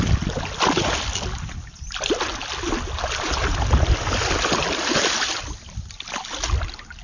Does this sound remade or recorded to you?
recorded